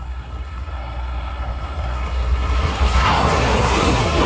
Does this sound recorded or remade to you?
remade